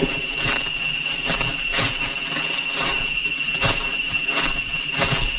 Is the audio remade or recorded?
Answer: recorded